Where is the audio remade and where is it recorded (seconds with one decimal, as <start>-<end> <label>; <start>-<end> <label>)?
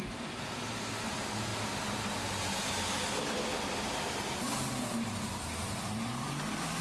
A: 0.0-1.5 remade; 1.5-3.1 recorded; 3.1-6.8 remade